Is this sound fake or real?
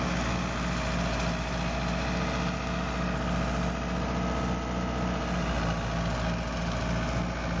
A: real